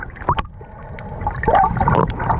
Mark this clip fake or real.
real